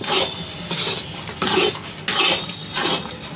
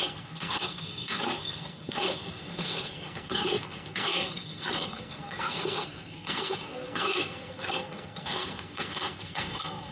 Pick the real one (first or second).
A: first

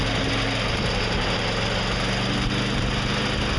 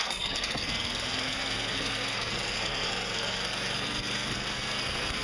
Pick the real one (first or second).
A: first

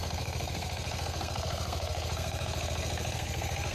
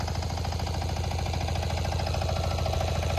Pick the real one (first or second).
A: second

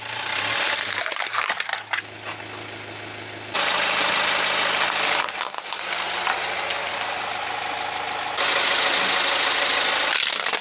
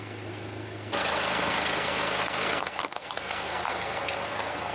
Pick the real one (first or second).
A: first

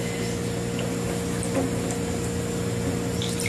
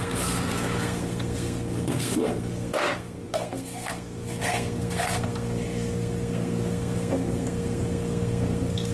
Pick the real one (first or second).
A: first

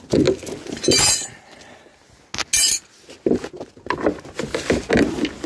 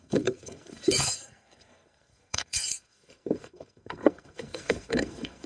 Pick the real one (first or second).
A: first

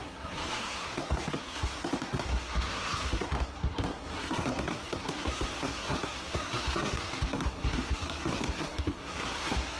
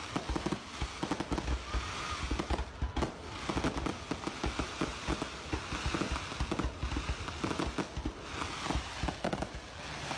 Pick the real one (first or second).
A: second